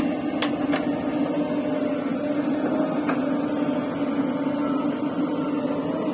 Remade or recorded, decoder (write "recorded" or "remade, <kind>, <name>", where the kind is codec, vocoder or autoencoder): recorded